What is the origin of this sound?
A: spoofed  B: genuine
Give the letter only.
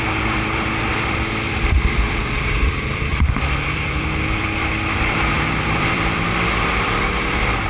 A